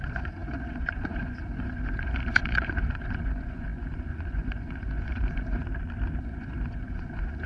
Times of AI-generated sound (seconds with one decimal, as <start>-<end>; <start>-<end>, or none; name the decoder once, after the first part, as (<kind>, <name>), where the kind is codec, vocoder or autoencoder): 0.0-5.6 (vocoder, Vocos); 6.2-7.5